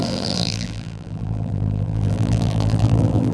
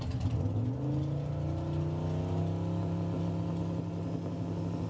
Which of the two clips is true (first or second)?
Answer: second